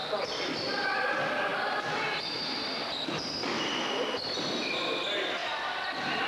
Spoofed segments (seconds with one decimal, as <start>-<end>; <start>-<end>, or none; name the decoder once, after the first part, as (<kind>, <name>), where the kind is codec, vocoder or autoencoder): 0.0-1.1 (vocoder, BigVGAN v2); 5.4-6.3